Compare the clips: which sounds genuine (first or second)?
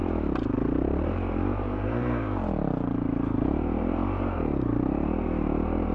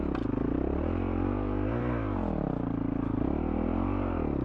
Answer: second